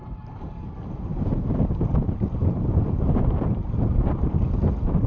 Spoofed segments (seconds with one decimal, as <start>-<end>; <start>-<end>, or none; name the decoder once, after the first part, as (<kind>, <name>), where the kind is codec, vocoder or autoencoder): 0.0-5.1 (vocoder, BigVGAN v2)